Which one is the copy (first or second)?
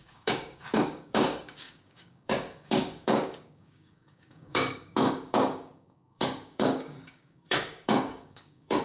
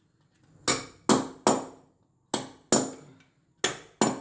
first